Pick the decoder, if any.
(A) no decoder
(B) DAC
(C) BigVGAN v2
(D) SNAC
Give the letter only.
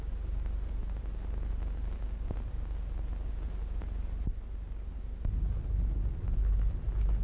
A